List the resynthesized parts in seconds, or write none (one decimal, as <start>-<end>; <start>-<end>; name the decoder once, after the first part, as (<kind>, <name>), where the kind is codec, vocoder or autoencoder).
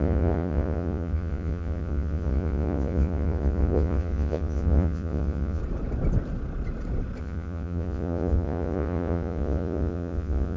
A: 0.0-5.6 (vocoder, Vocos); 7.2-10.6